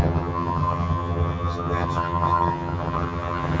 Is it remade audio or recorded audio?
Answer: remade